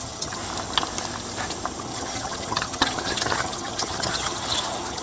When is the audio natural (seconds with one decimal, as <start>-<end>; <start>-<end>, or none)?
0.4-1.8